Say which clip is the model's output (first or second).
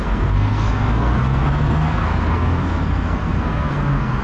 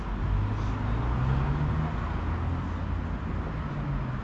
first